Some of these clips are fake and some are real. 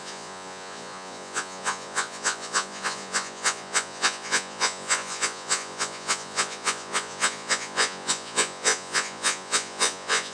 fake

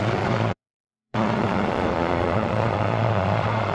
fake